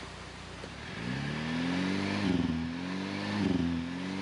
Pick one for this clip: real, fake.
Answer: real